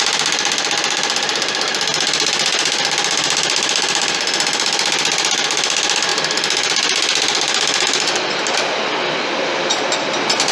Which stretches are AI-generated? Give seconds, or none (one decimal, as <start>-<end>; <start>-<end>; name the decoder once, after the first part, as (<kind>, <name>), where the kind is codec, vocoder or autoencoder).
none